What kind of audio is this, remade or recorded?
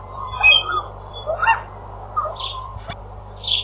remade